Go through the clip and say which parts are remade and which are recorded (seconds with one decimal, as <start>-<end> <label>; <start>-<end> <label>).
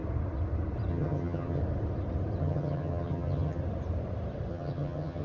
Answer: 0.0-0.9 recorded; 0.9-1.6 remade; 1.6-2.4 recorded; 2.4-3.6 remade; 3.6-4.5 recorded; 4.5-5.2 remade